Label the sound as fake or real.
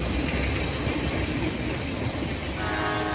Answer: real